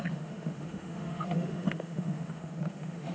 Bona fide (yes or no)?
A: no